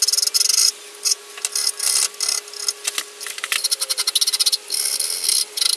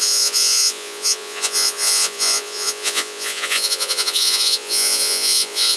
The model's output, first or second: second